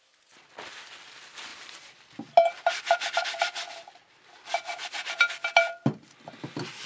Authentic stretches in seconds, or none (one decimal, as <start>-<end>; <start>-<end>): 0.0-6.9